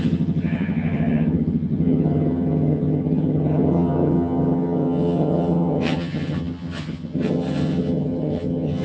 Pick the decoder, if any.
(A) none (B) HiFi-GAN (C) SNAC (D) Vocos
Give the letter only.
B